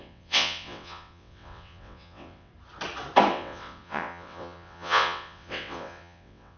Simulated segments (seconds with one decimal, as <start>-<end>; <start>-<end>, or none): 0.0-2.5; 3.3-6.6